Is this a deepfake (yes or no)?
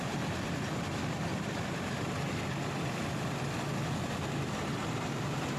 no